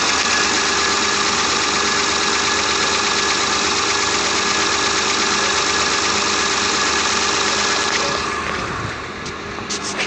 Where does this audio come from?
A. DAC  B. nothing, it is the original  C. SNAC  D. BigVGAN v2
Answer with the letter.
B